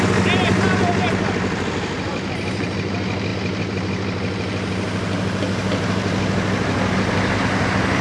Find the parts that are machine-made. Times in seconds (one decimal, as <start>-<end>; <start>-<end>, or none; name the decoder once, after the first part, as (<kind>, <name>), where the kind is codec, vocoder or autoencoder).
none